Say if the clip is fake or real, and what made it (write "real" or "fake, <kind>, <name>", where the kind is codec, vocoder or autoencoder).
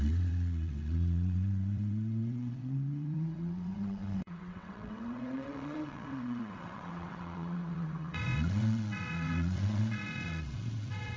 fake, vocoder, WaveNeXt